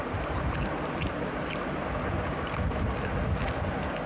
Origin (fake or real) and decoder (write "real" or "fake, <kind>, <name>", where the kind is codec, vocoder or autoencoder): real